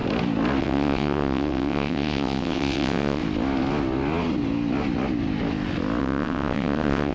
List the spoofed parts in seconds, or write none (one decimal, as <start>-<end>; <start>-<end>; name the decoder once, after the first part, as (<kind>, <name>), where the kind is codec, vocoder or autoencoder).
0.6-3.2 (vocoder, WaveNeXt); 6.0-7.1